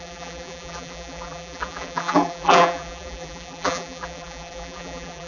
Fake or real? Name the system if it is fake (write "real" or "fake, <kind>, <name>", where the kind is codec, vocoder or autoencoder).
fake, vocoder, BigVGAN v2